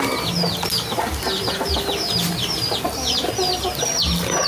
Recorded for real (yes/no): yes